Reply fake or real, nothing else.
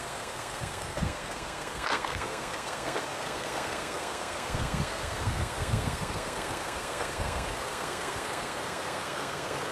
fake